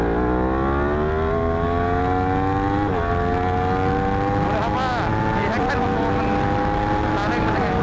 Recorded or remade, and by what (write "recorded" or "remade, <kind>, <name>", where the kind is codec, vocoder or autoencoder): recorded